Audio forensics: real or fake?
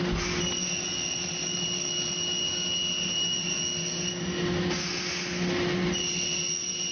real